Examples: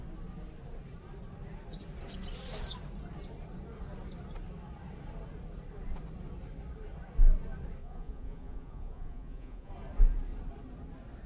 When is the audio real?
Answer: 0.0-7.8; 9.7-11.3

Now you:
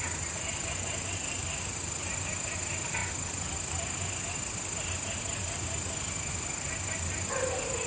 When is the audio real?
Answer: 0.0-7.9

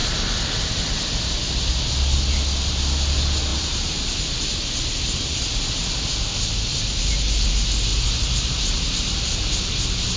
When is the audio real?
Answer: 0.0-3.5; 4.1-6.7; 7.5-7.9

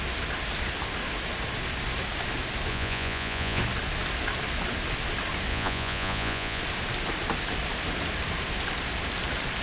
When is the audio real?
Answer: 0.0-2.7; 3.6-5.5; 6.6-9.6